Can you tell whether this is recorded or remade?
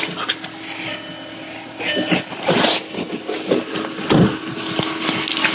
recorded